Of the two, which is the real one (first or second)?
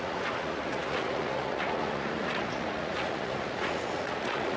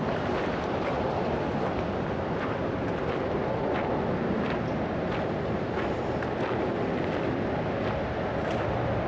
second